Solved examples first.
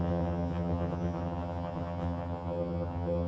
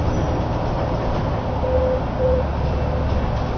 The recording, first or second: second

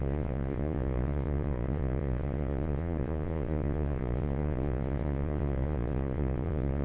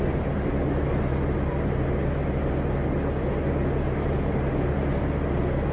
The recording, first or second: second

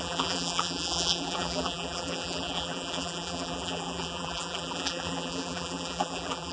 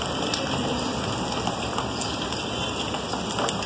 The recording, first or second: second